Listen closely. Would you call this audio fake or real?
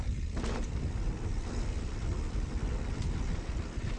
real